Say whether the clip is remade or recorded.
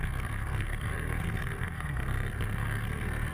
remade